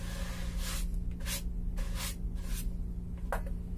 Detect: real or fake real